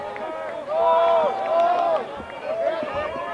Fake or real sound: real